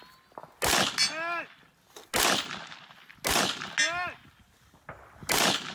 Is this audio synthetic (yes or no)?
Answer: no